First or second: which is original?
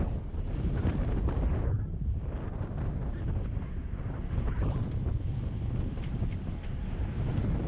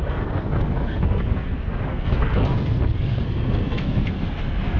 first